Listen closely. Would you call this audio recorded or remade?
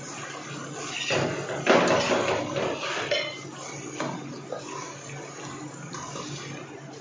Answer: recorded